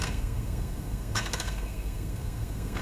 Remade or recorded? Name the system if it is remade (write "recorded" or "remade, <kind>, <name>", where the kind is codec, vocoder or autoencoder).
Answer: remade, codec, SNAC